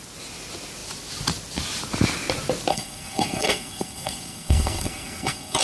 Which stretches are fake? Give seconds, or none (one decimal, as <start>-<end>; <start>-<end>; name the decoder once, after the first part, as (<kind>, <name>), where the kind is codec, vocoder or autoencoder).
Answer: 2.7-5.6 (codec, SNAC)

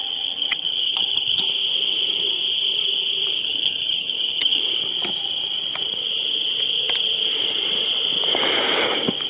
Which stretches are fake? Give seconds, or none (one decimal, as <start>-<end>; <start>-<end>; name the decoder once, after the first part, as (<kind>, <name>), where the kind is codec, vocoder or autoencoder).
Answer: 0.0-1.4 (vocoder, HiFi-GAN); 3.4-4.6

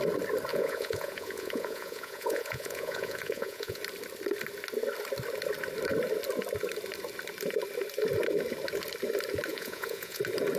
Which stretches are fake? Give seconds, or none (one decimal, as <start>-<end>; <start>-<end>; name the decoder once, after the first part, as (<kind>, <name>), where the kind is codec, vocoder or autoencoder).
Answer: 0.5-3.8 (vocoder, Vocos); 9.5-10.2

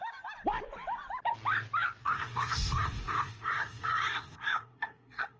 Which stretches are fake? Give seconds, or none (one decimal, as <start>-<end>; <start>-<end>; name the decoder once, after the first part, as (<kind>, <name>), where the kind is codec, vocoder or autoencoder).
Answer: 2.0-5.4 (codec, SNAC)

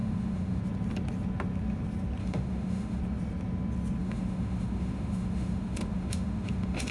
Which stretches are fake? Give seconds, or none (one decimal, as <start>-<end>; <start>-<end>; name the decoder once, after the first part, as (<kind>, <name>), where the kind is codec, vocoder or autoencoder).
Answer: 0.0-0.6 (autoencoder, DAC-VAE); 2.2-3.0; 4.0-6.9